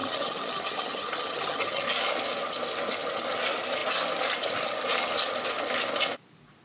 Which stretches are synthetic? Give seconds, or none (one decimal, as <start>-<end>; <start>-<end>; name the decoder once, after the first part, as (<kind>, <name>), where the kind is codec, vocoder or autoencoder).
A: 0.0-1.8 (vocoder, HiFi-GAN)